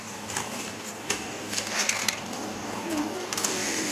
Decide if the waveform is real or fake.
fake